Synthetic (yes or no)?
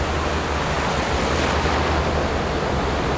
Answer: no